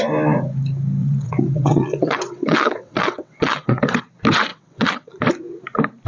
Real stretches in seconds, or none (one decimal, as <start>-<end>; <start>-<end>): 0.0-1.0; 4.0-4.5; 5.1-6.1